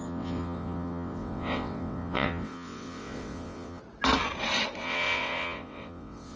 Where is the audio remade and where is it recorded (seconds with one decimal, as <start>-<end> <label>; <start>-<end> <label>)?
0.0-3.8 remade; 3.8-4.8 recorded; 4.8-6.4 remade